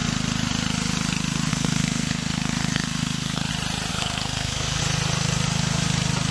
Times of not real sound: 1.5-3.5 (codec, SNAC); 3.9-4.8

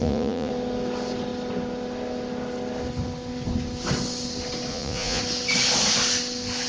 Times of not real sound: 0.0-0.5 (vocoder, Vocos); 4.7-5.2

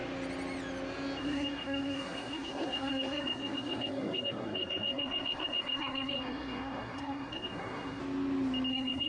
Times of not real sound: 1.2-8.0 (codec, SNAC); 8.7-9.1